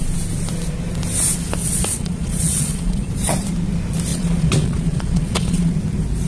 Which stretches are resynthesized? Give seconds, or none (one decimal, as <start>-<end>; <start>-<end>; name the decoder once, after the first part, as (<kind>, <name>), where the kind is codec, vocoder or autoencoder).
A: 1.6-3.1 (vocoder, Vocos); 4.1-5.7

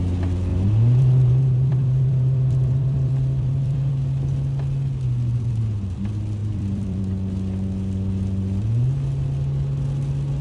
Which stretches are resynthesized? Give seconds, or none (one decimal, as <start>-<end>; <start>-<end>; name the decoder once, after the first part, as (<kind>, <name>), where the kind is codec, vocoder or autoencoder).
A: 0.5-3.9 (vocoder, BigVGAN v2); 6.4-7.0

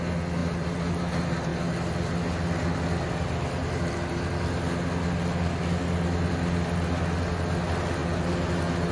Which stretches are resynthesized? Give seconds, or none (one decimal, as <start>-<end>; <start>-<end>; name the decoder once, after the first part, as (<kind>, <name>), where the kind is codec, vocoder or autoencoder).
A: none